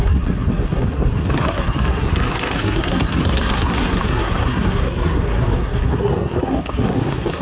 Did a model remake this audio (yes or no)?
yes